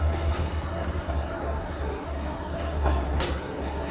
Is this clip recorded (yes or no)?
no